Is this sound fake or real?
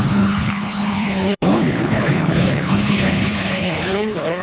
fake